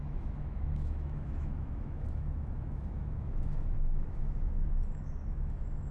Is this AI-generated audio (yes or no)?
yes